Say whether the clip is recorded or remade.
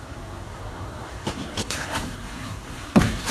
remade